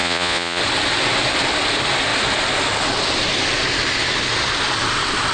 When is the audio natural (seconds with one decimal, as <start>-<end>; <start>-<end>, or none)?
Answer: 0.6-5.3